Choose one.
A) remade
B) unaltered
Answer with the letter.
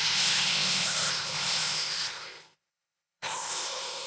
A